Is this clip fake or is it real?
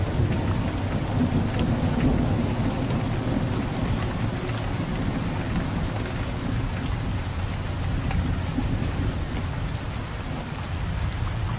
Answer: real